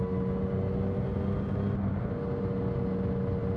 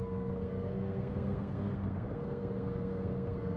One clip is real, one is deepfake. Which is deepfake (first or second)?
second